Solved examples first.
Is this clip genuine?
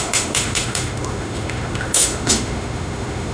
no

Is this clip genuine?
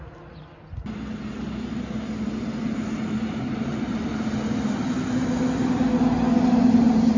yes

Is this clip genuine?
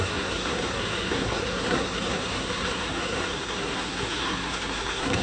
no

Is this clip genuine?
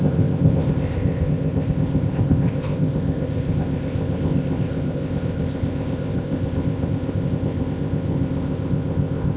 no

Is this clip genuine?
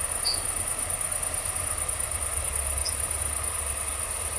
yes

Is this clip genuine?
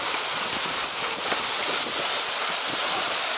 yes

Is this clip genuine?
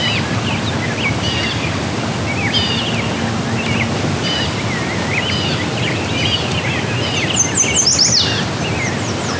yes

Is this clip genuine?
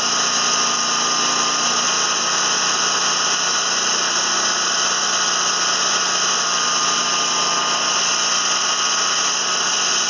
yes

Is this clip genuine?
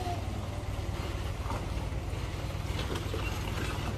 yes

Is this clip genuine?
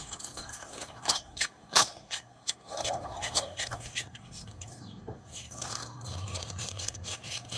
no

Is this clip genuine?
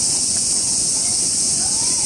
no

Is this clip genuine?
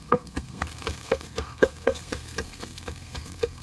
no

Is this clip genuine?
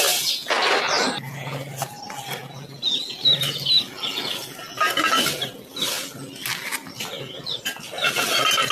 yes